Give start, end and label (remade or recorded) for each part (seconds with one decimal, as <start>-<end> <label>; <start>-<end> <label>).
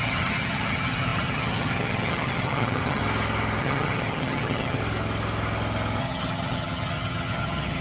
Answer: 0.0-3.0 remade; 3.0-3.6 recorded; 3.6-4.8 remade; 4.8-6.0 recorded; 6.0-7.8 remade